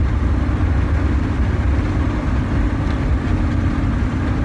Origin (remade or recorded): recorded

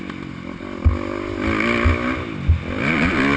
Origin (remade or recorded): recorded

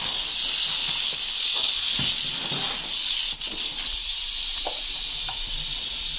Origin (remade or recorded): recorded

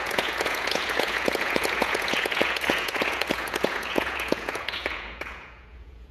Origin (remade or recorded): remade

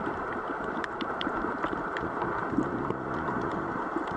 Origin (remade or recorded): remade